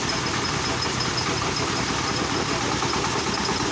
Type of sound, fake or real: real